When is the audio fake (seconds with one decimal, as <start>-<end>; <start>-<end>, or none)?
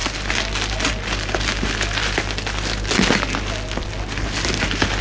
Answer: none